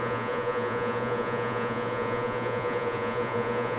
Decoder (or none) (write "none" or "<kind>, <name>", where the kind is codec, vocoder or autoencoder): vocoder, Vocos